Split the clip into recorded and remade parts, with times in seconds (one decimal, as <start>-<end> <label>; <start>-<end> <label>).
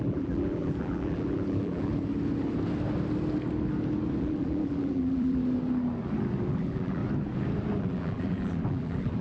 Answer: 0.0-1.9 remade; 1.9-4.2 recorded; 4.2-5.4 remade; 5.4-6.5 recorded; 6.5-7.0 remade; 7.0-7.8 recorded; 7.8-9.2 remade